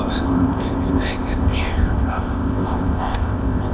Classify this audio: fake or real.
fake